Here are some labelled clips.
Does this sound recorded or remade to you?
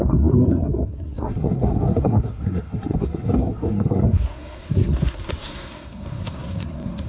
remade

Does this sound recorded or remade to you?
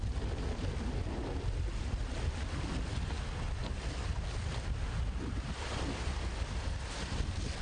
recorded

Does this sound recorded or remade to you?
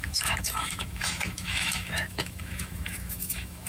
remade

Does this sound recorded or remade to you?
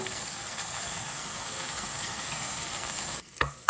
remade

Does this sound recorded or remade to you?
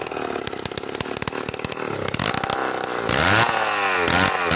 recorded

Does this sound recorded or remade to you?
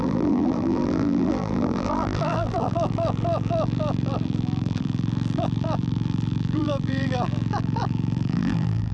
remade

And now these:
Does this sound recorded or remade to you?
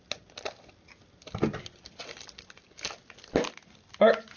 recorded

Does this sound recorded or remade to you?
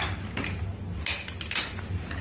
recorded